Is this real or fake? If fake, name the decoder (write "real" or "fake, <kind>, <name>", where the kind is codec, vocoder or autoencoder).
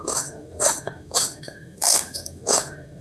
fake, autoencoder, DAC-VAE